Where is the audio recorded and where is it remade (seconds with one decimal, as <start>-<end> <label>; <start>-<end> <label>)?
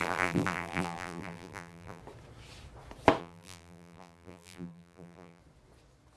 0.0-2.0 remade; 2.0-3.2 recorded; 3.2-5.4 remade; 5.4-6.2 recorded